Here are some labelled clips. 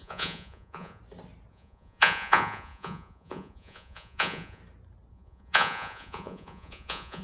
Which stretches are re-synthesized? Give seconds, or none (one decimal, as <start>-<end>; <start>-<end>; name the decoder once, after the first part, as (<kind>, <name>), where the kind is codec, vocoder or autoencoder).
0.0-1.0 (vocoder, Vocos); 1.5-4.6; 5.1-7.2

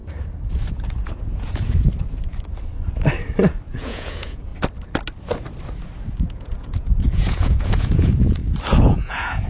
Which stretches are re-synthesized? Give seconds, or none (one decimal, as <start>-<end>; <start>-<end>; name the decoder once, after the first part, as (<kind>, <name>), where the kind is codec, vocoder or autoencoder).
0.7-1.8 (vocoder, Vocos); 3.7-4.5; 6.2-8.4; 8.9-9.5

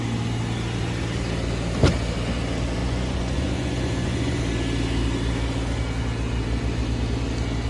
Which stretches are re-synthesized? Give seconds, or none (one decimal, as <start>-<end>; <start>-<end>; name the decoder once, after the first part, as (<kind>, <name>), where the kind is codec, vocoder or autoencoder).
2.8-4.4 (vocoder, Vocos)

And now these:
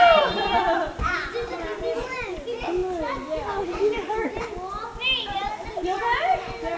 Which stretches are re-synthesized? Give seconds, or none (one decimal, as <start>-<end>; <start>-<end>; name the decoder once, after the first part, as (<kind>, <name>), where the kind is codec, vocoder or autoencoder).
0.9-1.6 (vocoder, Vocos)

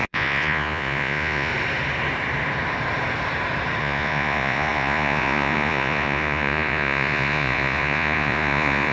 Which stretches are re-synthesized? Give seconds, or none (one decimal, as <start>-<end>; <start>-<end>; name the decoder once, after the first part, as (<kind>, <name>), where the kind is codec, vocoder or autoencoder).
0.0-1.5 (vocoder, Vocos); 3.8-8.9

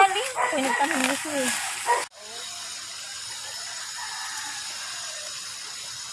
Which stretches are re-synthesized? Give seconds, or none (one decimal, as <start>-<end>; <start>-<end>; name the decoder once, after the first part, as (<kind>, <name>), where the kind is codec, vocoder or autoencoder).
none

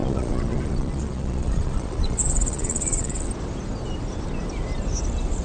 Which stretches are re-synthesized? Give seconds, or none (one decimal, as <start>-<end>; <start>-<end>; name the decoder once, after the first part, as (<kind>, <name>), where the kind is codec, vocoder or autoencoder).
0.0-3.2 (vocoder, Vocos)

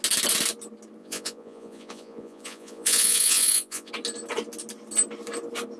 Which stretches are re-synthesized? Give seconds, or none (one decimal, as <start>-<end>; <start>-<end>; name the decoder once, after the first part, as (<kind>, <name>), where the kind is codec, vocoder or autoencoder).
1.0-3.9 (vocoder, Vocos)